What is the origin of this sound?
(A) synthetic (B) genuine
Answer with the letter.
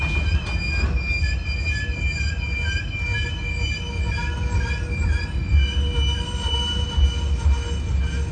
B